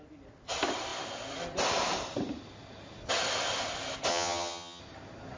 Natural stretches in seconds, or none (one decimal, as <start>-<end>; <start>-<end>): 0.0-4.1; 4.8-5.4